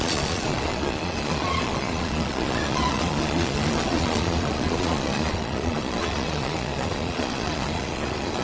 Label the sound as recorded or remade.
remade